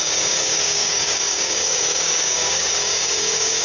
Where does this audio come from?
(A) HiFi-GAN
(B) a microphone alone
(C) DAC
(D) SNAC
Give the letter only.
C